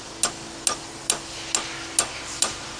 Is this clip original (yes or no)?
yes